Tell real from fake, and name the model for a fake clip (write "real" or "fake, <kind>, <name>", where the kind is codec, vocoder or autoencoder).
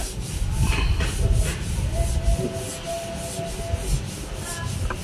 real